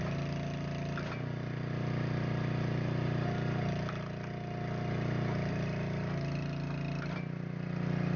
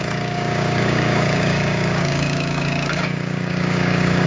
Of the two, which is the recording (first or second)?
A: first